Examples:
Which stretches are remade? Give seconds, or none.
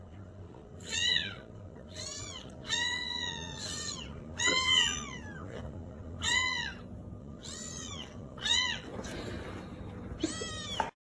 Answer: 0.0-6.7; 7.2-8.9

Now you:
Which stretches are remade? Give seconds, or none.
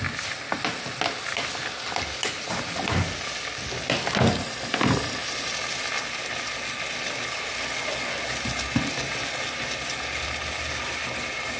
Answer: none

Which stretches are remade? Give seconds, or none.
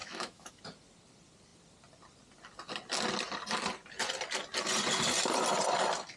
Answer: 0.0-0.6